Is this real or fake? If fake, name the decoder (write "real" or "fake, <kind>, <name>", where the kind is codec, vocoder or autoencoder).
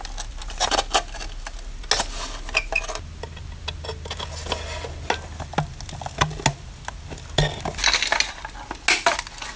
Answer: real